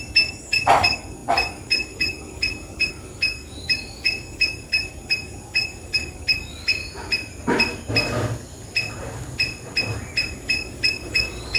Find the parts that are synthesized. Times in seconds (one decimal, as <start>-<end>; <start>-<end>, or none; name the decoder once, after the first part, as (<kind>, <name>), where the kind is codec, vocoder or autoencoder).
0.0-6.8 (codec, DAC); 10.3-11.6